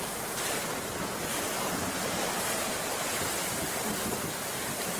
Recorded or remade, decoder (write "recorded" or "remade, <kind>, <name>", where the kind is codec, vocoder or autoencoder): recorded